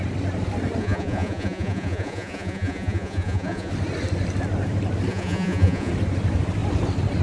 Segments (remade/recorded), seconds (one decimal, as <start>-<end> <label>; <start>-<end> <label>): 0.0-0.8 recorded; 0.8-3.7 remade; 3.7-5.1 recorded; 5.1-5.9 remade; 5.9-7.2 recorded